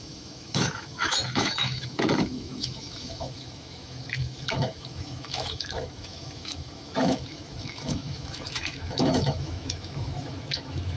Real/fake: fake